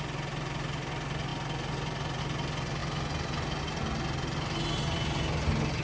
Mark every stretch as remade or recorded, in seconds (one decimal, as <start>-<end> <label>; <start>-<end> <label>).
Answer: 0.0-5.8 recorded